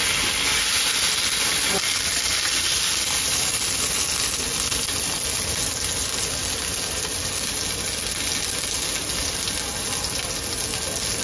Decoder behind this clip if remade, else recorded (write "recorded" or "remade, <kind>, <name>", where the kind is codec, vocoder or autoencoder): recorded